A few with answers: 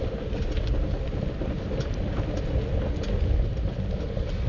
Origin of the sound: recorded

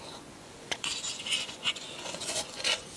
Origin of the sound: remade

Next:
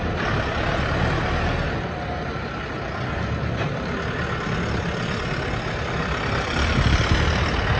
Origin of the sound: recorded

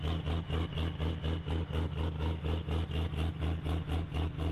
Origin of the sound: recorded